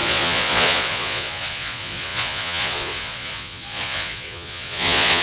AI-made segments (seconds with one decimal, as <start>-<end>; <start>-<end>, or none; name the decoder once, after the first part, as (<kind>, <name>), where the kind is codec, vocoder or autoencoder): 0.0-5.2 (vocoder, Vocos)